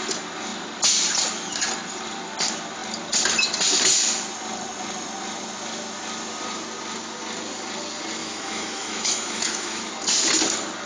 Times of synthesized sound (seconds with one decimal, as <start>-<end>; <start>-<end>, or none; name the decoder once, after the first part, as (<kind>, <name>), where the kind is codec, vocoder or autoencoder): 8.2-9.9 (autoencoder, DAC-VAE)